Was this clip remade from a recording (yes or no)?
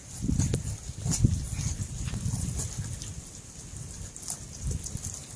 no